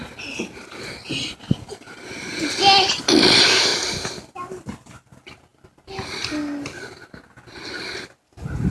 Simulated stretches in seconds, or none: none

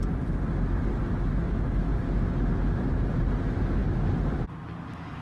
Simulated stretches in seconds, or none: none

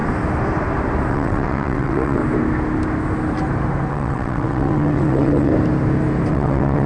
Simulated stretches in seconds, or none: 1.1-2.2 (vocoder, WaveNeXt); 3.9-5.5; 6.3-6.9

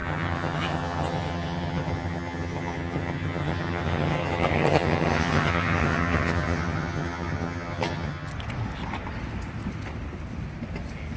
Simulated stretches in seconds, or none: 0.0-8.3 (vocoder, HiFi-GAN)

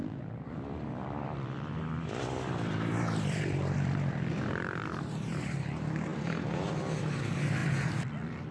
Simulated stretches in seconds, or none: 0.0-6.1 (vocoder, BigVGAN v2); 7.0-8.5